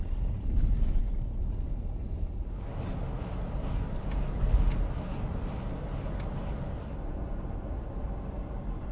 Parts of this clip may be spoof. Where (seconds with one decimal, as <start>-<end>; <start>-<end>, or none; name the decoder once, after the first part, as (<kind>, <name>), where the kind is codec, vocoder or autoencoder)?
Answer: none